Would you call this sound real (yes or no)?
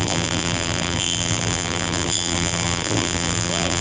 no